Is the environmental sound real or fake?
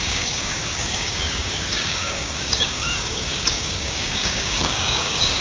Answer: fake